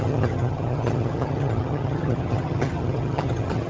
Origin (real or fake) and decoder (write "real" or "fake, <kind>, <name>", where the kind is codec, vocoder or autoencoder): fake, vocoder, HiFi-GAN